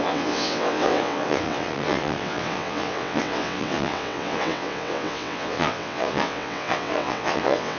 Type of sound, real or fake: fake